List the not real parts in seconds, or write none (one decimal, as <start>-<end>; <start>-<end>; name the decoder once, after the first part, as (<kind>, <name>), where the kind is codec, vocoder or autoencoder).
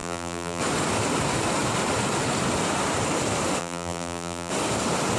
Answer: 0.0-0.6 (vocoder, BigVGAN v2); 3.6-4.5